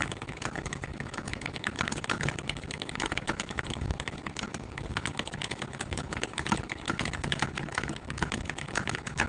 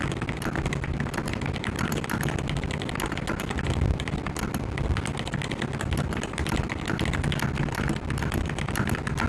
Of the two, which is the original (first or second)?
second